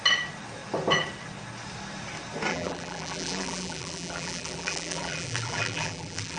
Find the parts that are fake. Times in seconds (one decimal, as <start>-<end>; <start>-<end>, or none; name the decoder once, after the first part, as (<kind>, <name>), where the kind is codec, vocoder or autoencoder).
2.5-6.4 (vocoder, BigVGAN v2)

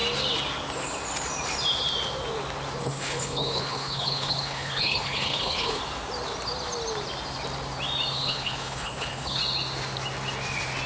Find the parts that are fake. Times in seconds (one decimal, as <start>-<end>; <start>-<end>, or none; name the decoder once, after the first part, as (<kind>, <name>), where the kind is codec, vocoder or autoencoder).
2.8-5.8 (codec, HILCodec); 8.1-9.4

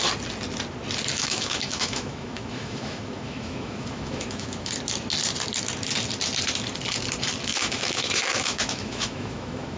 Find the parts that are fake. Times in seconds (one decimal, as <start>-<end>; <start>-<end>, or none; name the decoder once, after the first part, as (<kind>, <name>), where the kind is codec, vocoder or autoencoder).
1.1-4.7 (autoencoder, DAC-VAE); 7.5-9.8

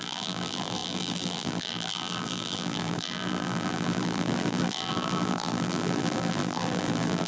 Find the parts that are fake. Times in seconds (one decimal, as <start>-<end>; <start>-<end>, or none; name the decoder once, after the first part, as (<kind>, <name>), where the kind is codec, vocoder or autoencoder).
0.0-7.3 (vocoder, BigVGAN v2)

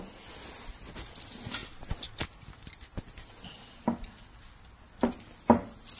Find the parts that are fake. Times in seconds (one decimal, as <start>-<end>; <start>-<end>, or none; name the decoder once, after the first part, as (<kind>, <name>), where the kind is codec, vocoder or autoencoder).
none